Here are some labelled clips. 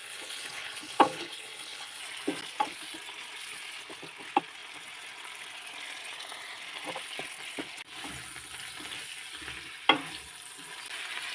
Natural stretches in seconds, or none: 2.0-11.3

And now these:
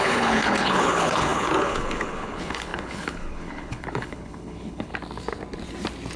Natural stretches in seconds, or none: 4.9-6.2